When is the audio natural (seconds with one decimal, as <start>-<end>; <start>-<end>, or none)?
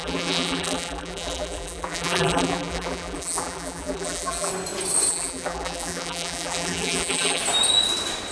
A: 4.5-5.1; 7.4-8.3